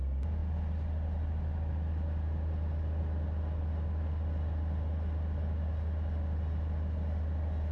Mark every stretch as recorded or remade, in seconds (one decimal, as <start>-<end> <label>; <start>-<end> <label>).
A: 0.0-7.7 recorded